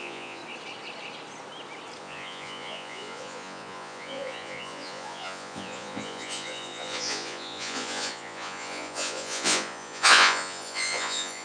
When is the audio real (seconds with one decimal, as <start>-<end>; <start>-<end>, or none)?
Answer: 0.4-2.0